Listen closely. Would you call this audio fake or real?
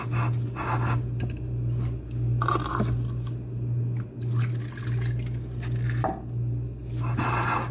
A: real